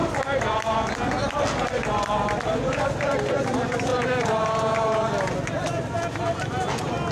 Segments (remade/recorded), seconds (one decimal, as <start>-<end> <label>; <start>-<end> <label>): 0.0-0.9 remade; 0.9-7.1 recorded